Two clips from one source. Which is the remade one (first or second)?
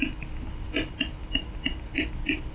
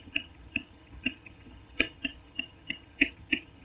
second